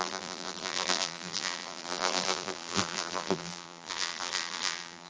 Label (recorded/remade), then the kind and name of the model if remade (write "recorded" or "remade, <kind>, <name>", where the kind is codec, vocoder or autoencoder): remade, vocoder, BigVGAN v2